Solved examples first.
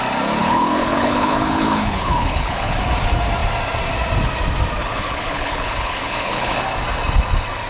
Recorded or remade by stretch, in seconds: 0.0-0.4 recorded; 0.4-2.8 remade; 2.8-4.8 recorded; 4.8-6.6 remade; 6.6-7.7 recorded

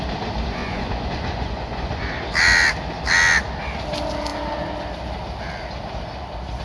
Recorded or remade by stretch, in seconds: 0.0-0.6 recorded; 0.6-2.0 remade; 2.0-6.6 recorded

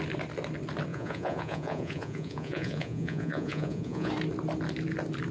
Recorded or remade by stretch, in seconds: 0.0-0.9 recorded; 0.9-4.1 remade; 4.1-5.3 recorded

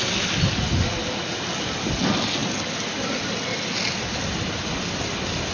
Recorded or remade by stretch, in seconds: 0.0-5.5 recorded

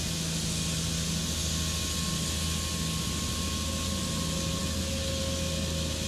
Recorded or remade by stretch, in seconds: 0.0-6.1 recorded

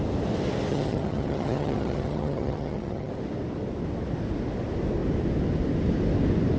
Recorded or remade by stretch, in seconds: 0.0-0.7 recorded; 0.7-3.1 remade; 3.1-6.6 recorded

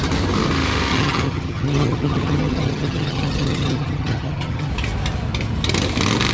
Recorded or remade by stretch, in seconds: 0.0-0.9 recorded; 0.9-4.7 remade; 4.7-6.3 recorded

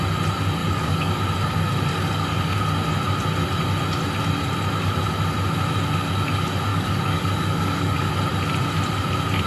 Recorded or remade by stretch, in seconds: 0.0-0.6 recorded; 0.6-1.2 remade; 1.2-1.9 recorded; 1.9-2.6 remade; 2.6-6.7 recorded; 6.7-8.1 remade; 8.1-9.5 recorded